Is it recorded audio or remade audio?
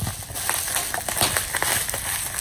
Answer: recorded